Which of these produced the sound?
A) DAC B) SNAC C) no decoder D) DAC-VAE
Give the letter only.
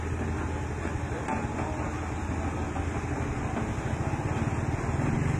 C